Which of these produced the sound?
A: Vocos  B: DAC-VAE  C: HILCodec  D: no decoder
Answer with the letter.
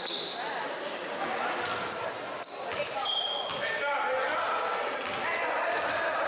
D